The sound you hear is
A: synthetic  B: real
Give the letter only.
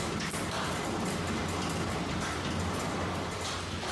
B